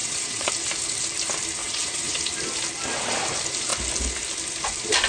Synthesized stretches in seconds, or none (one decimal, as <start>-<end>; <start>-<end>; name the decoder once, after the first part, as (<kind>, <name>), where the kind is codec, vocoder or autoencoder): 0.0-0.5 (vocoder, WaveNeXt); 1.6-2.2